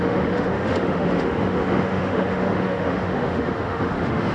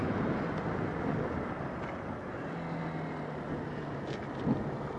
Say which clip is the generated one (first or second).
first